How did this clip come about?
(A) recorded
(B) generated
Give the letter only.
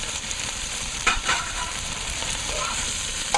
B